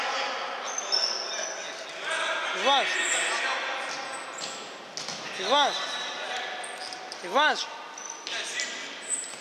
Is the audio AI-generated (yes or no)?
no